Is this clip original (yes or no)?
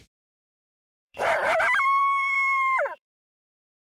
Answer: no